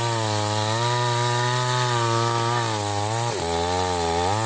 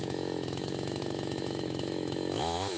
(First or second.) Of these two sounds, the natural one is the first